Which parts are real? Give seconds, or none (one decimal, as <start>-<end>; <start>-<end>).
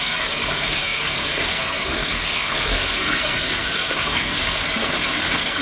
none